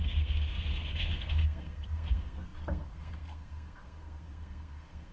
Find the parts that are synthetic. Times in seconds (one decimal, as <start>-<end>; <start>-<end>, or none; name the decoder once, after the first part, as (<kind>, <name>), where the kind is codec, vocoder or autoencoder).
0.0-5.1 (codec, SNAC)